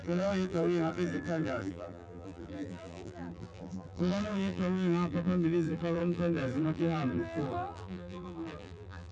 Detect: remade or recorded remade